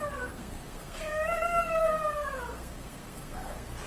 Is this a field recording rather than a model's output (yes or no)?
no